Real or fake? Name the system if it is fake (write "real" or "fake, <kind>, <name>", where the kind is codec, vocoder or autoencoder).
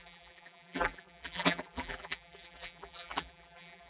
fake, vocoder, BigVGAN v2